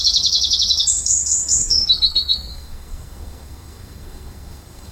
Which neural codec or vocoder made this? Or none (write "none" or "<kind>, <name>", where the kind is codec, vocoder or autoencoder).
codec, SNAC